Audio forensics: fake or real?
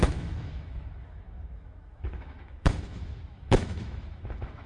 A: fake